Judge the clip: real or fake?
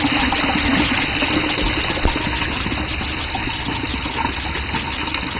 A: real